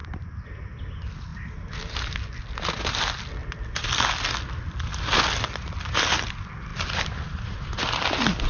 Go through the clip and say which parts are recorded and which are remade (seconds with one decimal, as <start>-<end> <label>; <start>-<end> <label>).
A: 0.0-0.7 remade; 0.7-6.7 recorded; 6.7-7.8 remade; 7.8-8.5 recorded